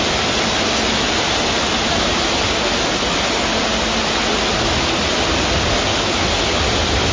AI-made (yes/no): no